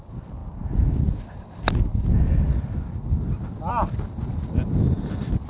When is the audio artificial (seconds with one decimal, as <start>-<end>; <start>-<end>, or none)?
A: none

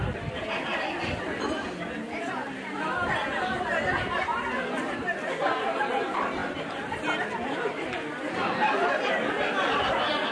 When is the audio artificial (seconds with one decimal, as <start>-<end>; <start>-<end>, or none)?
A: 6.4-8.9

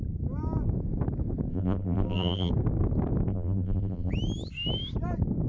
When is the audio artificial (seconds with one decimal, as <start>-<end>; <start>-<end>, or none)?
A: 1.5-2.5; 3.3-4.1

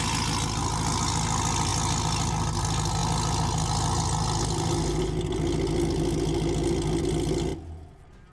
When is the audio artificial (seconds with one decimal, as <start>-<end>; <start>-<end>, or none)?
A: none

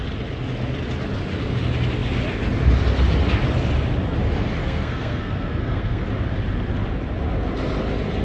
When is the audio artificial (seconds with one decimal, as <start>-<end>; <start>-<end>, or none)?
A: 4.6-6.1

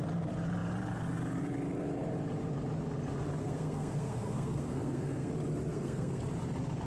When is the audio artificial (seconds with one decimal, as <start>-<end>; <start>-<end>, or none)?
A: 3.4-5.3; 5.7-6.2